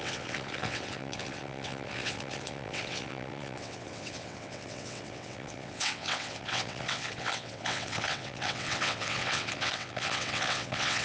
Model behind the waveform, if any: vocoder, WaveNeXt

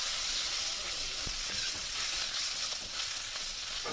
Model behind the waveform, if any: vocoder, WaveNeXt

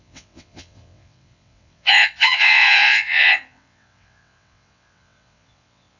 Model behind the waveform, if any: vocoder, WaveNeXt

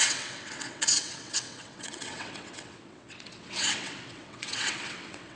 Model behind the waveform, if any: vocoder, WaveNeXt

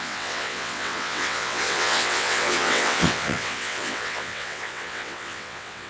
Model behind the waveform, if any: vocoder, WaveNeXt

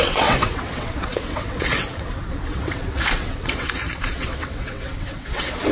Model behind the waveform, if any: vocoder, WaveNeXt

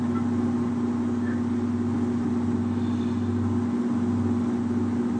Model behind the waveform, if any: none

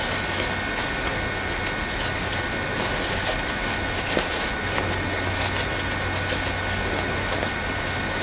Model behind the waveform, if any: none